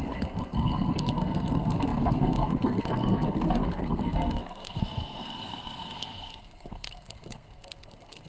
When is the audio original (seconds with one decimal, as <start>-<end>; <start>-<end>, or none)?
none